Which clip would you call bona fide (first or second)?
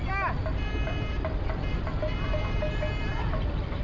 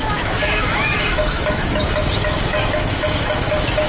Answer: first